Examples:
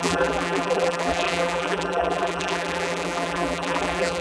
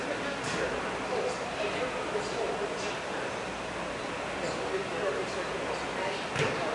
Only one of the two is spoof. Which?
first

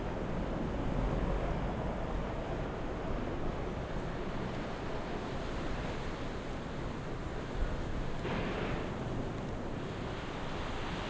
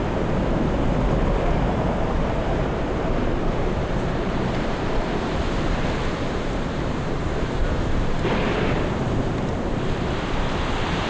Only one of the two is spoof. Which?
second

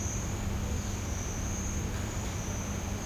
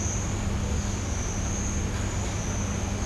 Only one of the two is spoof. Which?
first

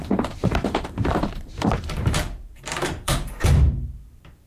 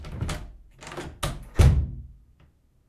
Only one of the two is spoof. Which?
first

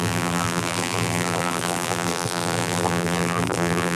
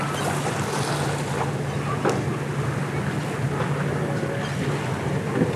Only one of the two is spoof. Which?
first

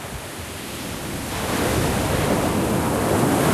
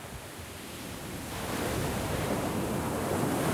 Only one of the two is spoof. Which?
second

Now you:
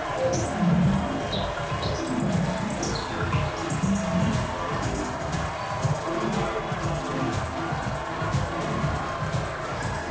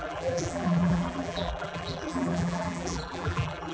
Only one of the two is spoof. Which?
second